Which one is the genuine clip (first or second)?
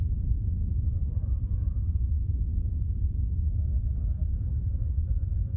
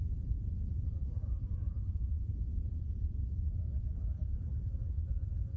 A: first